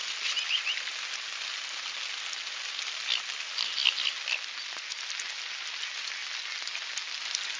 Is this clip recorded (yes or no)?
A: yes